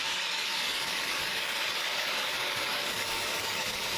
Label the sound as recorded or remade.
remade